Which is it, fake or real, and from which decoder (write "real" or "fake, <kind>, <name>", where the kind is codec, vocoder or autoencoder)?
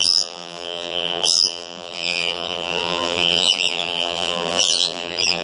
fake, vocoder, BigVGAN v2